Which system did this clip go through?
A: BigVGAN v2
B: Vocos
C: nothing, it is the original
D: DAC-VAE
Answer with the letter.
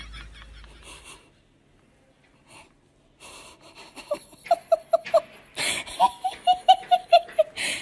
C